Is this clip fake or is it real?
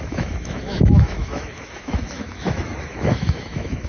fake